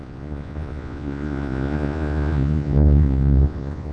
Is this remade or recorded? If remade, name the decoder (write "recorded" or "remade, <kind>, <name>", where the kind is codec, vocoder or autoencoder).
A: remade, vocoder, Vocos